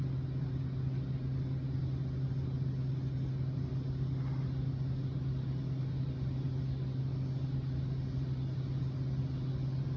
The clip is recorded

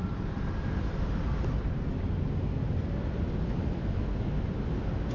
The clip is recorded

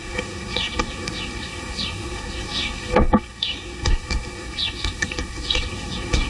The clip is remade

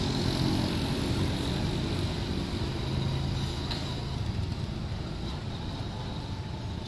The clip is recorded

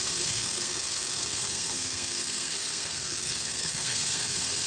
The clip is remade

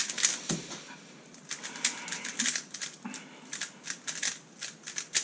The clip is recorded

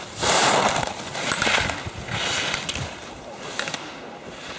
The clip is recorded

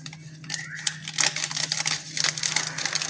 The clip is recorded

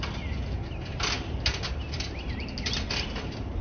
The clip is recorded